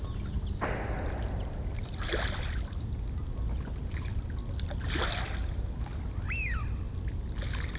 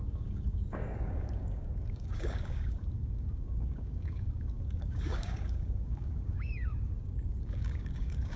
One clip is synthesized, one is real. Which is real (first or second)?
first